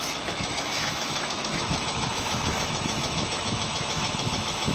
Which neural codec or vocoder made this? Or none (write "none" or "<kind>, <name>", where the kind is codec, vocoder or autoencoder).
autoencoder, DAC-VAE